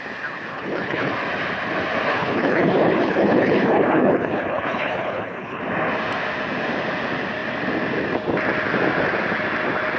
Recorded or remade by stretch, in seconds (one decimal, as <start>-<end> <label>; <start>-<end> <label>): 0.0-0.5 recorded; 0.5-1.1 remade; 1.1-2.1 recorded; 2.1-5.6 remade; 5.6-10.0 recorded